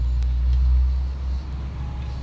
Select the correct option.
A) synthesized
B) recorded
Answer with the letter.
B